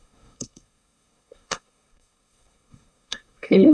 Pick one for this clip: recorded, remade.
remade